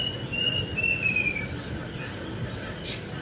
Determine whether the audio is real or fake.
real